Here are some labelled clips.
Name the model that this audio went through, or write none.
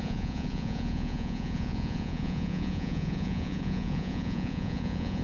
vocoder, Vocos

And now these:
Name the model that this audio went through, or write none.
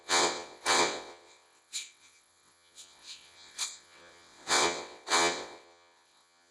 vocoder, WaveNeXt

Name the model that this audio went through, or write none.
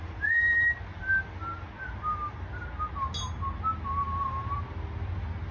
none